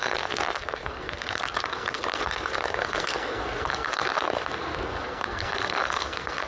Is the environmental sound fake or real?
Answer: fake